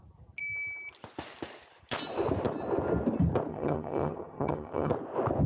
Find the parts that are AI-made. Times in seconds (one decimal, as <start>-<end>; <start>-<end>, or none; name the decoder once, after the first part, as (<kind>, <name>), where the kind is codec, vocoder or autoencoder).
3.5-4.9 (vocoder, HiFi-GAN)